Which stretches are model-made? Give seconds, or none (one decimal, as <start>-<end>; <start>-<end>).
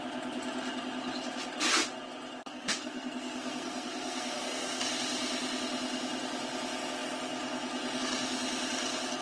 2.4-4.8